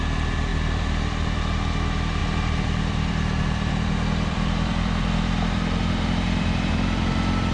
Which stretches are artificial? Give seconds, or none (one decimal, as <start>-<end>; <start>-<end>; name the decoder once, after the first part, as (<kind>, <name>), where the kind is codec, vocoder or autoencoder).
0.5-1.4 (vocoder, BigVGAN v2); 2.2-6.7